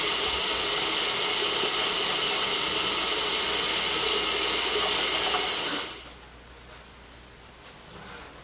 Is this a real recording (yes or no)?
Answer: yes